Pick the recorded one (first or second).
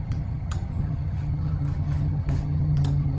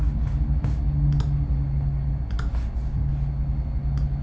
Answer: second